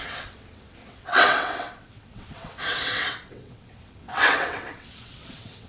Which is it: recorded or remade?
remade